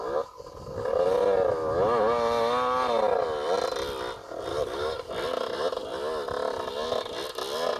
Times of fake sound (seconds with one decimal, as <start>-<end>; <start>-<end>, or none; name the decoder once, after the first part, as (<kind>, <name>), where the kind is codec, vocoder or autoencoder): 4.5-5.1 (codec, DAC)